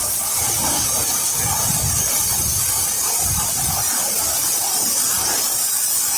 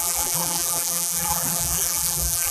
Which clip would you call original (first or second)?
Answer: first